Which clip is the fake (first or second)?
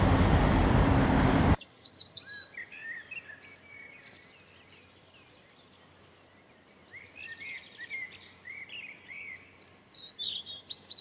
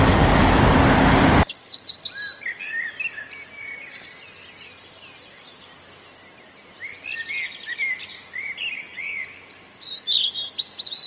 first